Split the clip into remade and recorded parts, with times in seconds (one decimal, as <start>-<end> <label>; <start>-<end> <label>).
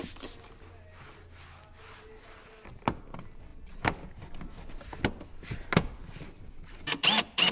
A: 0.0-7.5 recorded